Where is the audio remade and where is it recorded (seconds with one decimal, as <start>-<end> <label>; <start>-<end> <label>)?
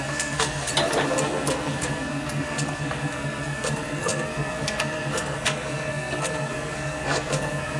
0.0-0.7 remade; 0.7-1.2 recorded; 1.2-7.8 remade